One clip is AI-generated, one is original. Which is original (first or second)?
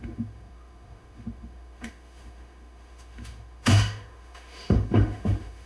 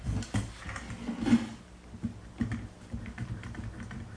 second